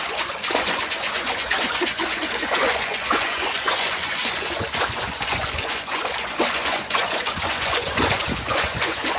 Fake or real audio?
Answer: fake